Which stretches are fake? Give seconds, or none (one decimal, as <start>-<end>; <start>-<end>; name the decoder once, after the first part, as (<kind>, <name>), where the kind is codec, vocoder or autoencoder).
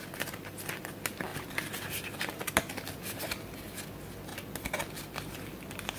1.3-3.9 (vocoder, BigVGAN v2); 4.3-6.0